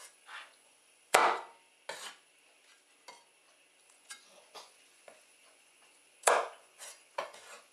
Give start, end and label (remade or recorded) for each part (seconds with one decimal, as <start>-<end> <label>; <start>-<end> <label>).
0.0-1.2 remade; 1.2-3.8 recorded; 3.8-7.7 remade